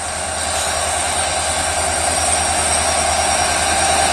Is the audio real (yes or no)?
yes